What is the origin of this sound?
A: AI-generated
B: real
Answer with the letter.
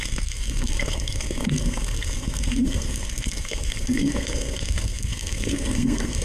A